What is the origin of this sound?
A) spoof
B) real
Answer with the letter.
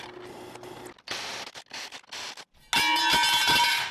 B